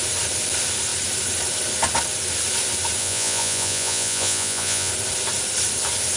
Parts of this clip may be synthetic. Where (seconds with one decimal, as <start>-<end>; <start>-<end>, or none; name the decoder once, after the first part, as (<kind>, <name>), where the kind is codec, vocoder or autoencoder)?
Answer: 3.0-4.9 (vocoder, Vocos)